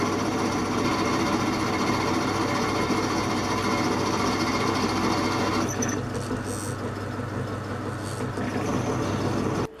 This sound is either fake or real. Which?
real